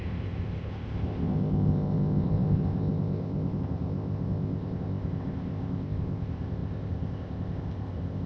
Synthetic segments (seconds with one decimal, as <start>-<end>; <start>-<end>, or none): 0.0-8.3

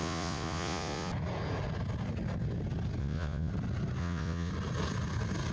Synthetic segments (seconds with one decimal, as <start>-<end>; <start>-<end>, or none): 0.0-1.1; 3.0-3.5; 4.0-4.5

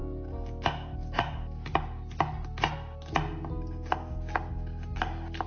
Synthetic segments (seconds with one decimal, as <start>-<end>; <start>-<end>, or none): none

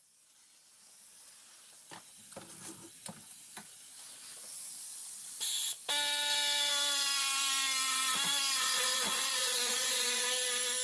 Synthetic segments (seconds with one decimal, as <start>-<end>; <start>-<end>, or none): 8.6-10.2